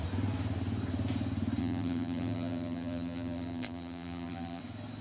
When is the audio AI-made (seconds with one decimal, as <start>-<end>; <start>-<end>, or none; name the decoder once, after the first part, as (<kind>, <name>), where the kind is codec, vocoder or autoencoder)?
1.6-4.6 (vocoder, BigVGAN v2)